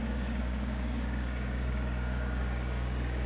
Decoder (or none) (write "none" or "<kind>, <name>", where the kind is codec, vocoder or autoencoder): codec, DAC